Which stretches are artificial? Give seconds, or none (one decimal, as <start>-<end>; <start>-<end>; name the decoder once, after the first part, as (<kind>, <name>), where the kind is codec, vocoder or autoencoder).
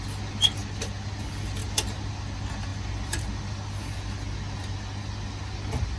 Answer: none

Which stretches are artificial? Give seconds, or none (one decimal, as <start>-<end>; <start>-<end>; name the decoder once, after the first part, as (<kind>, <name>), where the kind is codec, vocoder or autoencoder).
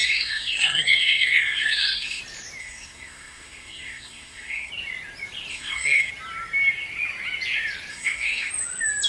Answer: 0.0-2.2 (codec, SNAC); 2.6-4.7; 5.5-6.1; 7.9-8.5